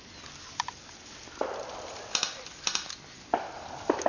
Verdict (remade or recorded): recorded